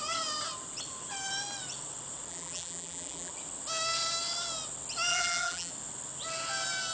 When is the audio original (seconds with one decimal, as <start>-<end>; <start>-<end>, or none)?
0.0-2.3; 3.3-5.1; 5.7-6.9